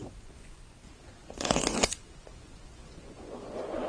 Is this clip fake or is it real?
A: fake